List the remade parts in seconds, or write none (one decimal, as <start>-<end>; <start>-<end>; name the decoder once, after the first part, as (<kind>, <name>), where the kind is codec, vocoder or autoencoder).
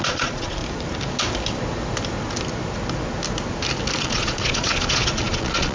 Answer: 0.0-0.6 (vocoder, Vocos); 4.0-5.7